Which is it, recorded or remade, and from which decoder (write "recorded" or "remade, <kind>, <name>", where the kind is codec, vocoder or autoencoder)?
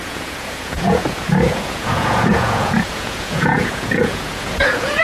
remade, vocoder, Vocos